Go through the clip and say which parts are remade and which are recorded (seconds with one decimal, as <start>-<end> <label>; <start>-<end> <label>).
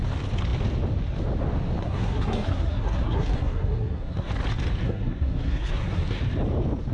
0.0-1.8 recorded; 1.8-4.3 remade; 4.3-4.8 recorded; 4.8-6.2 remade; 6.2-6.9 recorded